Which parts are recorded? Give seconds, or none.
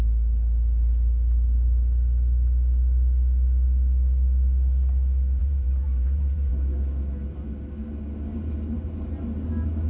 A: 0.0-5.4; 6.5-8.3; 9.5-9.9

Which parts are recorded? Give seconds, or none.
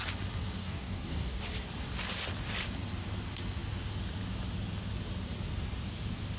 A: 0.0-0.6; 1.4-6.4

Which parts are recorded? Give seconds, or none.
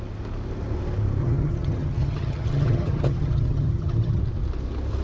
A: 0.0-1.2; 4.2-5.0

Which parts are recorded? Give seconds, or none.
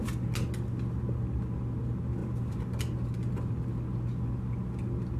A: 0.0-5.2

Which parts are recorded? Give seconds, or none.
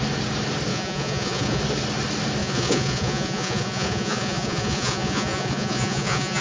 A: 0.0-0.7; 1.6-2.4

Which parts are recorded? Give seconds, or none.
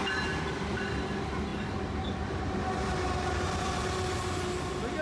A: 0.0-5.0